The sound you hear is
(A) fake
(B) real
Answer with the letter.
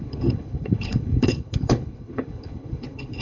A